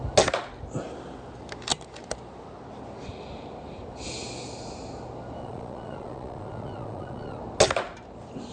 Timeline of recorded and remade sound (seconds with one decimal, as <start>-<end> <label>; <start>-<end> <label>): 0.0-5.4 recorded; 5.4-7.4 remade; 7.4-8.5 recorded